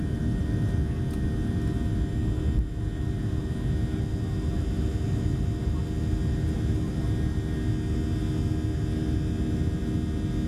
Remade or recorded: recorded